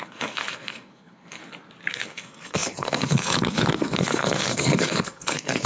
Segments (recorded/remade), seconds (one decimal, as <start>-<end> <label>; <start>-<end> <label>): 0.0-1.4 remade; 1.4-1.9 recorded; 1.9-5.7 remade